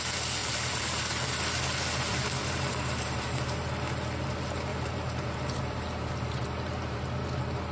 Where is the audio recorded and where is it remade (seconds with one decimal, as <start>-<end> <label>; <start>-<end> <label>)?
0.0-0.4 recorded; 0.4-1.0 remade; 1.0-2.1 recorded; 2.1-3.6 remade; 3.6-4.7 recorded; 4.7-7.0 remade; 7.0-7.7 recorded